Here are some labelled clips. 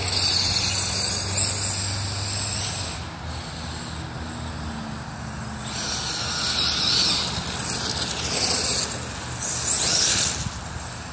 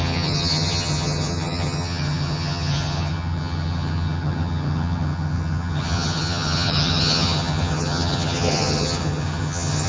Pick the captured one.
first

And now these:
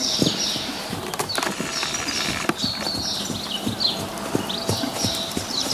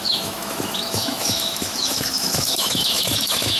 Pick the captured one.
first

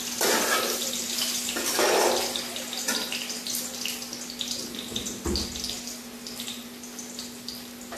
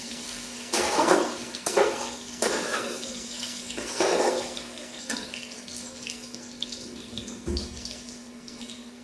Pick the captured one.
first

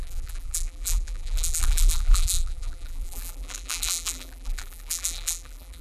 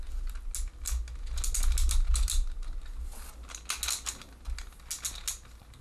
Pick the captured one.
second